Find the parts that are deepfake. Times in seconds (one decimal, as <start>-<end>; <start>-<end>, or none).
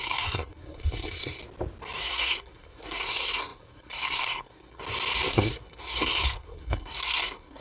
0.0-1.4; 2.0-4.8; 5.3-7.6